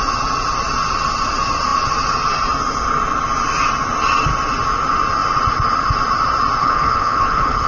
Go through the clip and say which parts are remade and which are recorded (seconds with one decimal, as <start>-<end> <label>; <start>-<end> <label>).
0.0-6.6 recorded; 6.6-7.7 remade